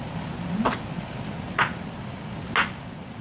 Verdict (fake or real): real